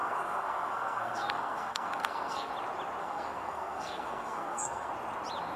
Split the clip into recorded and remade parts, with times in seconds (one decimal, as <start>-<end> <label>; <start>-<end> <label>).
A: 0.0-2.5 remade; 2.5-3.0 recorded; 3.0-4.9 remade; 4.9-5.6 recorded